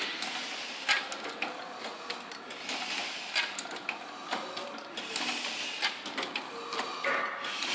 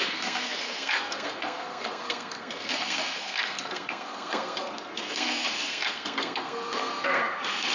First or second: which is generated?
second